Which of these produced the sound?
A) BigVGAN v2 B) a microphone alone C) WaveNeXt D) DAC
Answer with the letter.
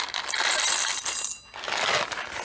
B